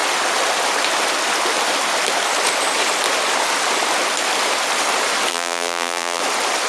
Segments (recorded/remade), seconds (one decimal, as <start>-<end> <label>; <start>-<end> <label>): 0.0-5.3 recorded; 5.3-6.2 remade; 6.2-6.7 recorded